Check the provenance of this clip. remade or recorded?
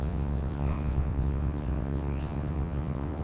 remade